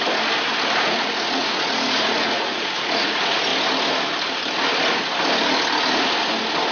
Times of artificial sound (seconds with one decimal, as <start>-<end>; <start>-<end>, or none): 0.8-3.5